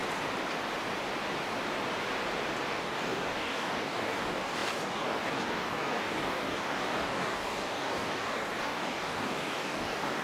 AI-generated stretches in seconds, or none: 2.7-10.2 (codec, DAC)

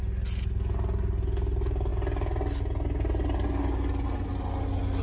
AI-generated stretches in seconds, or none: none